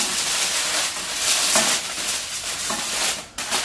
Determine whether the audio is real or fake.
real